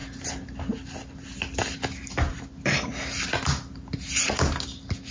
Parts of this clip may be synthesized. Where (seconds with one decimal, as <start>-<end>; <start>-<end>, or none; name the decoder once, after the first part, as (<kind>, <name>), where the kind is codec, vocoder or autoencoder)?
none